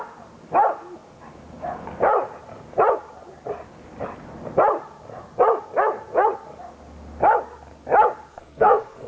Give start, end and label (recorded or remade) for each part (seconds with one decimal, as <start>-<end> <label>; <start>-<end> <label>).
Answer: 0.0-8.3 recorded; 8.3-9.1 remade